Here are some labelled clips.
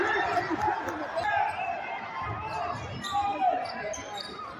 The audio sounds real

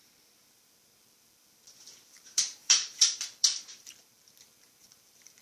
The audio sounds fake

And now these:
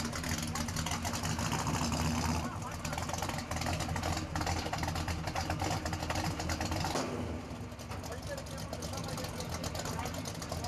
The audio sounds real